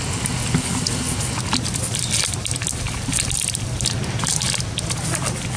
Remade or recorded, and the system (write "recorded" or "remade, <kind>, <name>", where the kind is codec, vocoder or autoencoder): recorded